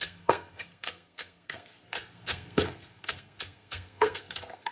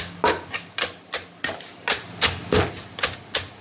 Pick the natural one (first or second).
second